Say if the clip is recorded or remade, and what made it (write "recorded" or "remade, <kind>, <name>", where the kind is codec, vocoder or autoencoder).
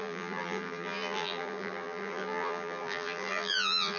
remade, vocoder, BigVGAN v2